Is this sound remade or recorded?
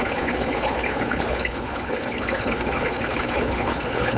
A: remade